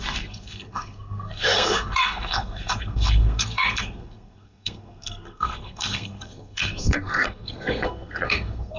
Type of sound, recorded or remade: remade